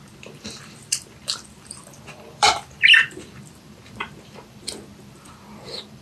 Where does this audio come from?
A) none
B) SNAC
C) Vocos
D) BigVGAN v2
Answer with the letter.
D